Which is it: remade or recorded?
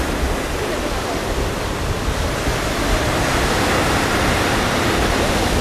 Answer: recorded